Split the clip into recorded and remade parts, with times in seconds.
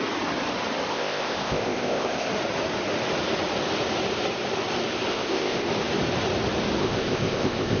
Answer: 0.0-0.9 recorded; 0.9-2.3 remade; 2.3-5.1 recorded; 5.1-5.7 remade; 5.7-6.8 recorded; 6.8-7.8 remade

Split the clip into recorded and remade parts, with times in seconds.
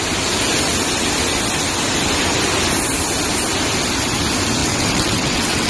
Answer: 0.0-4.6 recorded; 4.6-5.7 remade